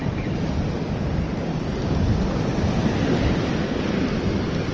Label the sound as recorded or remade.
recorded